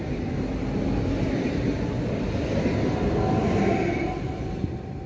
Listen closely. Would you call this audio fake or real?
real